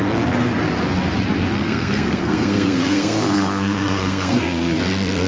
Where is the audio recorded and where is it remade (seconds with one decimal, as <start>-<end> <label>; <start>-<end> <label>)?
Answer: 0.0-1.6 recorded; 1.6-4.8 remade; 4.8-5.3 recorded